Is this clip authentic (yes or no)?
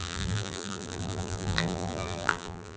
no